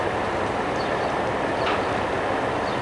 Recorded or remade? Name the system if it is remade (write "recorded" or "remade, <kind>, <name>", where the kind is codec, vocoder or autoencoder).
recorded